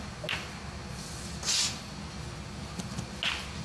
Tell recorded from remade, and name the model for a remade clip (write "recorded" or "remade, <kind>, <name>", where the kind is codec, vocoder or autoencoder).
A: recorded